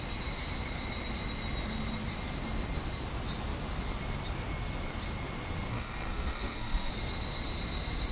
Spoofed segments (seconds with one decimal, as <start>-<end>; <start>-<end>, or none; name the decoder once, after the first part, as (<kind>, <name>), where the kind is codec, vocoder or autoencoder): 5.7-6.9 (codec, SNAC)